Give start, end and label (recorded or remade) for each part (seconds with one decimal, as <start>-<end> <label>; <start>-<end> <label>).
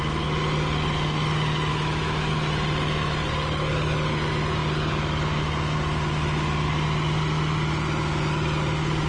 0.0-1.7 recorded; 1.7-2.3 remade; 2.3-9.1 recorded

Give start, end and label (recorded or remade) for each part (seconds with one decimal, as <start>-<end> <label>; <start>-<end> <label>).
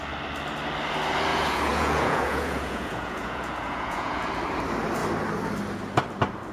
0.0-1.3 recorded; 1.3-4.3 remade; 4.3-6.5 recorded